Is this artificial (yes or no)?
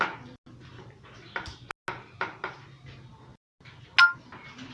no